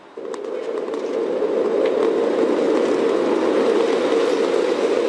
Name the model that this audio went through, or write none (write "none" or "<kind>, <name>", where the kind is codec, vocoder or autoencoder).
none